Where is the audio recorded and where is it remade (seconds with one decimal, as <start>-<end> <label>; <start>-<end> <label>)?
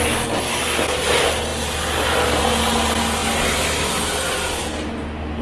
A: 0.0-5.4 recorded